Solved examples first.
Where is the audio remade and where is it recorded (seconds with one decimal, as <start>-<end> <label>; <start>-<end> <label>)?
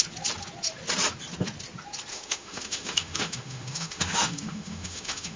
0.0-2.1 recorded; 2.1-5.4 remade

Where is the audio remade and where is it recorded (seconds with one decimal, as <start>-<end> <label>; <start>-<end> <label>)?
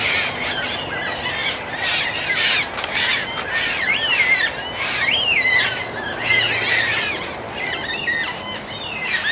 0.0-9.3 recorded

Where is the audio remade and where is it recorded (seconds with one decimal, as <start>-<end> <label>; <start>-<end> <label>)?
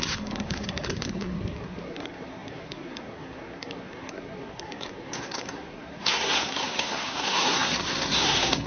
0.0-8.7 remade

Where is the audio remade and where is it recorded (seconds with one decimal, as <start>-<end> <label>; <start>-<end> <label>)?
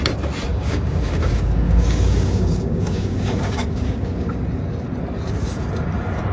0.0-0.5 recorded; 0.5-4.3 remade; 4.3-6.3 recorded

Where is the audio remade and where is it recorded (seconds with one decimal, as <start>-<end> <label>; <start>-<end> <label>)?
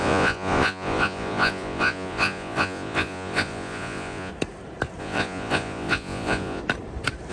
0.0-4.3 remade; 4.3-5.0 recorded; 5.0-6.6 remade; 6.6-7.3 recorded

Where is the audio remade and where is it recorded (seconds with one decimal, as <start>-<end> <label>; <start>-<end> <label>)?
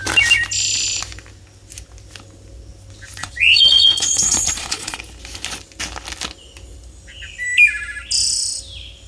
0.0-3.2 recorded; 3.2-5.0 remade; 5.0-9.1 recorded